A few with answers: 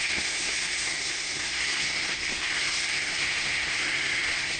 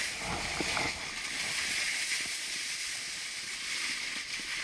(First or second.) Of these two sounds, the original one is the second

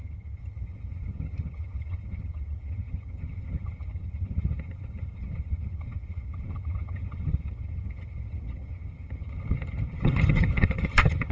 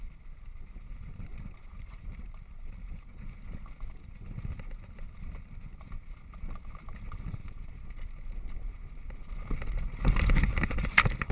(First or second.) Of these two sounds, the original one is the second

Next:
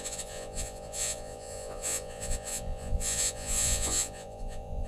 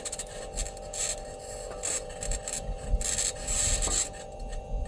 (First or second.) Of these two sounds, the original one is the second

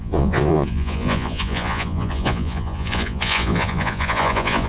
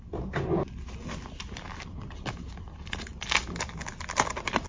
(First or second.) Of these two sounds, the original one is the second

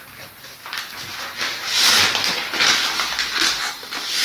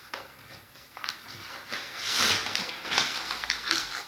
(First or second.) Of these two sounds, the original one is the first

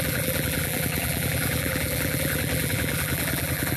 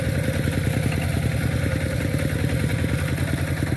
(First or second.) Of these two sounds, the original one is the second